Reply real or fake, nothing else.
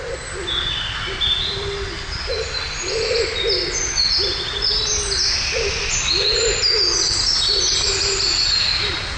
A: real